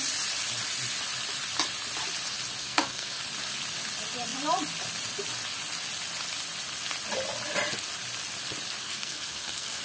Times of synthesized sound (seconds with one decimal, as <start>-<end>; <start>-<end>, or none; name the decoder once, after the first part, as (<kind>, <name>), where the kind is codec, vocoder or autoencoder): 2.6-3.2 (codec, SNAC); 8.8-9.8